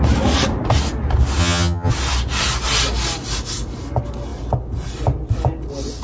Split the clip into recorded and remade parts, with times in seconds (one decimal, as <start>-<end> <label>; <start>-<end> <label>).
0.0-1.4 recorded; 1.4-1.9 remade; 1.9-6.0 recorded